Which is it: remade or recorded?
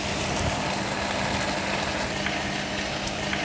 recorded